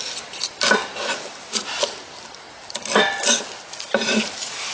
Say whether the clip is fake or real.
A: real